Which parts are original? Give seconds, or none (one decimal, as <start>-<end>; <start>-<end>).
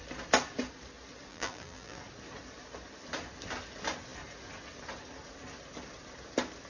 0.0-1.3; 2.0-6.7